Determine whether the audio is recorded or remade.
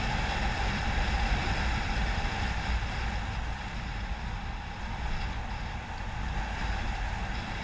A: recorded